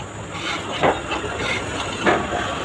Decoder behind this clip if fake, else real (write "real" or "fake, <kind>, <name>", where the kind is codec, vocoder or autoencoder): real